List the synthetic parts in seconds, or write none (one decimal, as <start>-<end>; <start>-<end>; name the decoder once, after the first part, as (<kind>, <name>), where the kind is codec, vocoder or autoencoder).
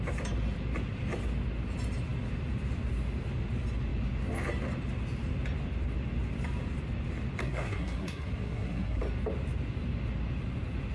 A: 7.4-9.0 (codec, SNAC)